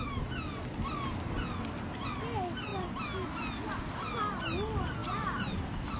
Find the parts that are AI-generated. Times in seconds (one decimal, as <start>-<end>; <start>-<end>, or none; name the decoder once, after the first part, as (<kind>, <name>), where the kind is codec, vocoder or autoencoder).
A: none